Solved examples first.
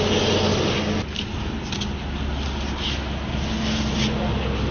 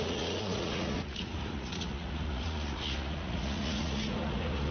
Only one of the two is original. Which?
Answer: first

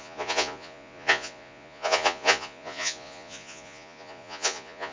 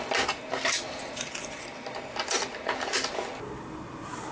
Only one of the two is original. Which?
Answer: second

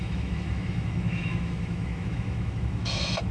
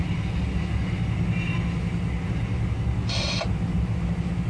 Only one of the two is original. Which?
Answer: second